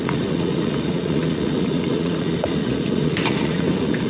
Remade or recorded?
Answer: remade